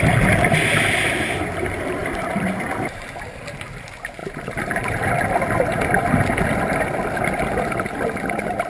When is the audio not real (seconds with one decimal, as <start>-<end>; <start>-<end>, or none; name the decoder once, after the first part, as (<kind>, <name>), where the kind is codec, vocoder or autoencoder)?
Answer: none